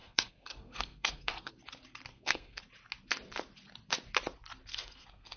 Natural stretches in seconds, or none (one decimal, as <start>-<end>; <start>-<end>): 1.5-2.1; 2.6-4.7